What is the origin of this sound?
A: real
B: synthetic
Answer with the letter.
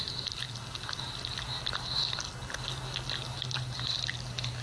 A